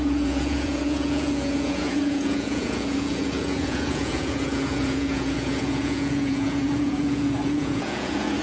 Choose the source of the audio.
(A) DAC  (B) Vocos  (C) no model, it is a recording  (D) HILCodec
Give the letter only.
B